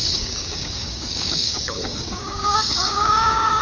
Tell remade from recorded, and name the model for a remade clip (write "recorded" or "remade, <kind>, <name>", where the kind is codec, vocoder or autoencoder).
remade, codec, DAC